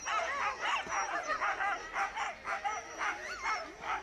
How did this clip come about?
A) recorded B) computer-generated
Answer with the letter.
A